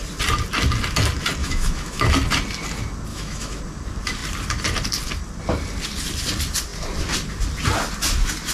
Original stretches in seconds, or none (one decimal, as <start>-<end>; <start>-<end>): 0.0-1.4; 2.0-3.1; 3.6-8.5